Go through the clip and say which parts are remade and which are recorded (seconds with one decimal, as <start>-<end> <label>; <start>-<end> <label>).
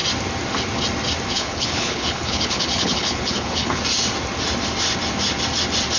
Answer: 0.0-1.3 recorded; 1.3-3.8 remade; 3.8-6.0 recorded